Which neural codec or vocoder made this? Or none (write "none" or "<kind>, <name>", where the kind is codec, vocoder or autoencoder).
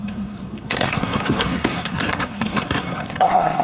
codec, SNAC